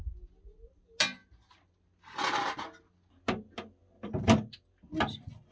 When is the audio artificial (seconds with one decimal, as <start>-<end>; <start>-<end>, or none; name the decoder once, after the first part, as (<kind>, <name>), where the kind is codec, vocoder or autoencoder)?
none